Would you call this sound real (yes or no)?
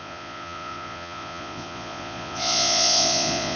no